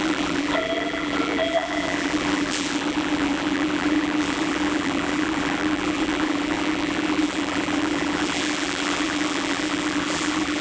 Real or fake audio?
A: fake